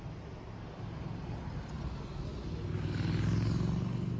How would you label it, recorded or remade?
recorded